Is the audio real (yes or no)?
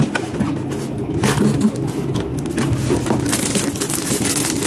yes